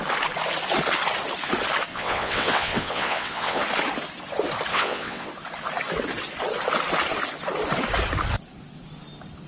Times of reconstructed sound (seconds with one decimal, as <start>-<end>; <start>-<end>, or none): 1.9-3.6; 4.7-5.3